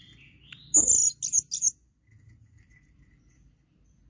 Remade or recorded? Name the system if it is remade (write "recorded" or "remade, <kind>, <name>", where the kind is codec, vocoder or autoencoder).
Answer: recorded